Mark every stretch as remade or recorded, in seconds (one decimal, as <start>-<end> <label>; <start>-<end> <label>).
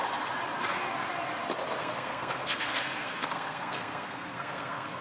0.0-1.8 recorded; 1.8-5.0 remade